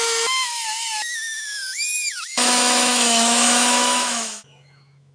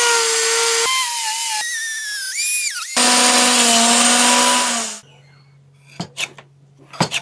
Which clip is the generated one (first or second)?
first